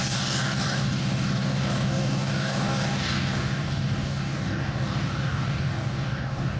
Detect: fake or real fake